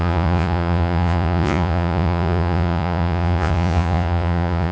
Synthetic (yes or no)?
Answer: yes